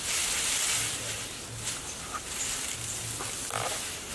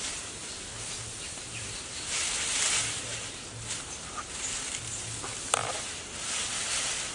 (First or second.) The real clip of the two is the first